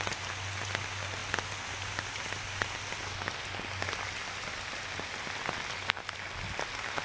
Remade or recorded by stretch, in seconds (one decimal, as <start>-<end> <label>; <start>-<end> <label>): 0.0-7.0 recorded